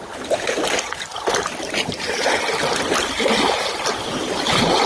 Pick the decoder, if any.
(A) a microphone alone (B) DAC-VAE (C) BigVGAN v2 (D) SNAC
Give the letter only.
A